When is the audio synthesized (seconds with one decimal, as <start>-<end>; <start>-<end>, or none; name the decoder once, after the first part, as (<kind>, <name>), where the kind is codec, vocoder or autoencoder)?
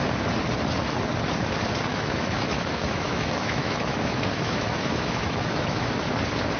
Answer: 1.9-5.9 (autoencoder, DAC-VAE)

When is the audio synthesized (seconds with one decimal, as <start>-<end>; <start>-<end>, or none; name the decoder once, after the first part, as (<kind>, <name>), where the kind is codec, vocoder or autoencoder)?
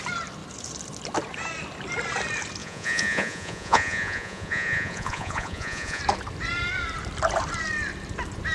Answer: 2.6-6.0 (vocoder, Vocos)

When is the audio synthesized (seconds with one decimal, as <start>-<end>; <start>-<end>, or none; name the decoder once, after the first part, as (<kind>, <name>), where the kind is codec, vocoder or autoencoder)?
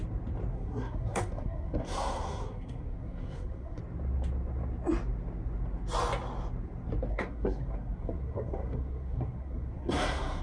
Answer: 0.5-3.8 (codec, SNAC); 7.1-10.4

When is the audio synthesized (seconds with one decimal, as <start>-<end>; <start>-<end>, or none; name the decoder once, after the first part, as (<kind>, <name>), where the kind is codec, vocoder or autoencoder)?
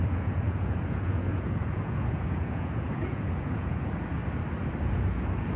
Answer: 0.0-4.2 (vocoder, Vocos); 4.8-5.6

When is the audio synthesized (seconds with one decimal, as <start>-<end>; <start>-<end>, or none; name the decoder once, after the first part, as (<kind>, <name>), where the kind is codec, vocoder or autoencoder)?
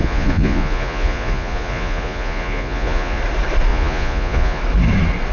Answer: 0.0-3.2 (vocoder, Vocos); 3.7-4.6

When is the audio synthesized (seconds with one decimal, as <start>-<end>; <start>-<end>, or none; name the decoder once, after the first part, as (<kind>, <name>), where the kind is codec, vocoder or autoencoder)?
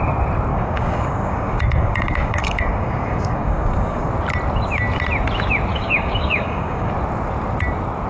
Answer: 0.5-4.1 (codec, DAC); 5.7-6.9